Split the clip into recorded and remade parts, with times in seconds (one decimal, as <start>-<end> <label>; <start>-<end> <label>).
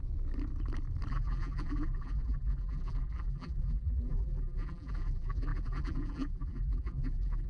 0.0-1.1 recorded; 1.1-7.5 remade